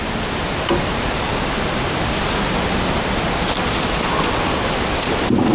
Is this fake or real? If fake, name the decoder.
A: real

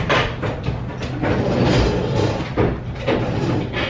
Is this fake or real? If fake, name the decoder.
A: real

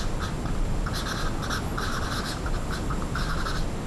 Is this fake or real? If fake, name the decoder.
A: real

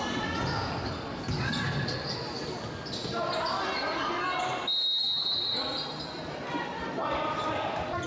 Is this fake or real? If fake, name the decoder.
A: real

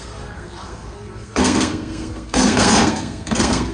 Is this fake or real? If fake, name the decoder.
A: fake, codec, SNAC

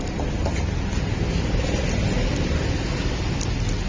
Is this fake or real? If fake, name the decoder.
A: real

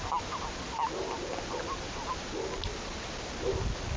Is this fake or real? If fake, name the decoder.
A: real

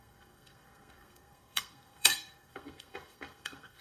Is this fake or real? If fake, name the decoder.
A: fake, codec, SNAC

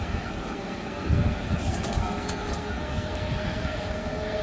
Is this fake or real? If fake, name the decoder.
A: fake, codec, SNAC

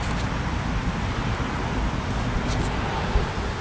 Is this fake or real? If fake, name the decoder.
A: fake, vocoder, BigVGAN v2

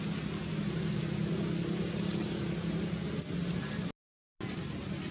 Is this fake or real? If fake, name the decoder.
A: real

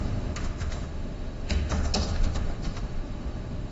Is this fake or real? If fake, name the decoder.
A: fake, autoencoder, DAC-VAE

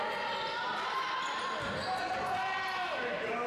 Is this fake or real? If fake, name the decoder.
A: real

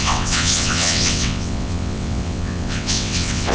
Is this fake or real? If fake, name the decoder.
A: fake, vocoder, WaveNeXt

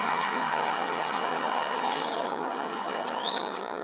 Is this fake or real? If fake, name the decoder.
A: fake, vocoder, HiFi-GAN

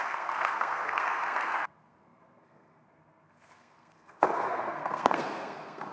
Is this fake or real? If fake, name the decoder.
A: fake, codec, SNAC